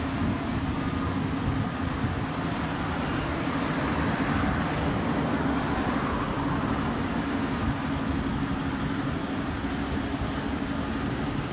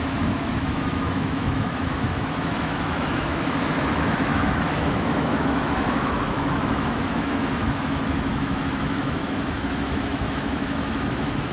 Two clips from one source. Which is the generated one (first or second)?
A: second